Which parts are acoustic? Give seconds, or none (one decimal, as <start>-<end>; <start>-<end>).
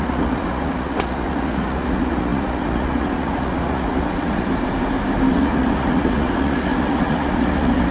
4.5-5.3